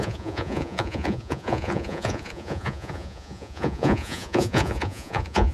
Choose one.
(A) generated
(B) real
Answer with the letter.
A